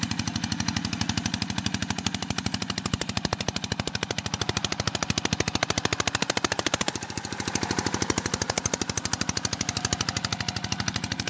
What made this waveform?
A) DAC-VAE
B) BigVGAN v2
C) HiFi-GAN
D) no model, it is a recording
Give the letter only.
D